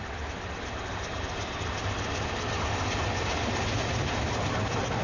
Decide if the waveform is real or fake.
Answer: real